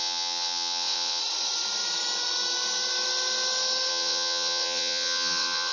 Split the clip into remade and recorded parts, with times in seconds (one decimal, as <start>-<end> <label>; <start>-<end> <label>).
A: 0.0-1.2 remade; 1.2-3.9 recorded; 3.9-5.7 remade